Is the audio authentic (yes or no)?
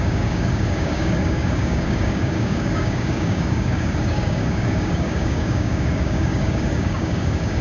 no